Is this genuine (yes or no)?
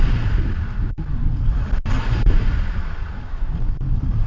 no